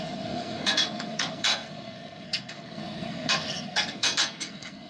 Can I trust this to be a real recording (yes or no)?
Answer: no